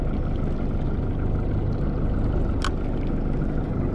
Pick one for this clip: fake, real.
real